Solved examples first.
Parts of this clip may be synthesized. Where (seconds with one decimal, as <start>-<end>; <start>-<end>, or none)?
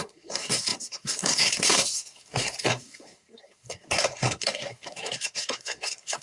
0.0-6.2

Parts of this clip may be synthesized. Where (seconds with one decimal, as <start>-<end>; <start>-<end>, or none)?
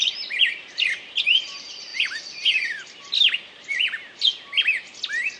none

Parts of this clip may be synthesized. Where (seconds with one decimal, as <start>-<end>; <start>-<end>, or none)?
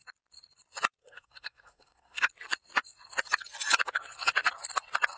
1.0-2.3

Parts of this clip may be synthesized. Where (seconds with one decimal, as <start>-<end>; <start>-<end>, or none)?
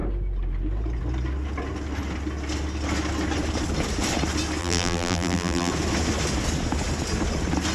4.6-5.7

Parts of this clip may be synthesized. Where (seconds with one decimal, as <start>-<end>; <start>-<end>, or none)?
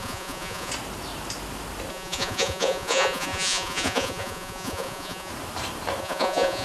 0.0-0.7; 1.9-5.3; 6.0-6.6